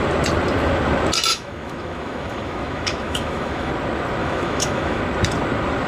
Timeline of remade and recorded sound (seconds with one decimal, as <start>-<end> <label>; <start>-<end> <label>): 0.0-1.3 recorded; 1.3-3.7 remade; 3.7-4.2 recorded; 4.2-5.0 remade; 5.0-5.9 recorded